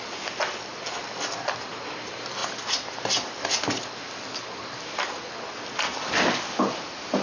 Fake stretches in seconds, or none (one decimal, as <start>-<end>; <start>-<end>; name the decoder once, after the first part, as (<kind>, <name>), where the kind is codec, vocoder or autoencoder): none